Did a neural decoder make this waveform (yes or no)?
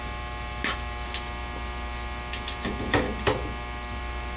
no